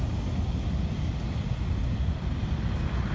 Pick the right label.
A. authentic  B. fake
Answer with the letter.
A